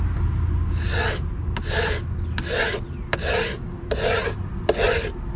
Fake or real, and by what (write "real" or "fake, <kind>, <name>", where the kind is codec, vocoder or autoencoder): real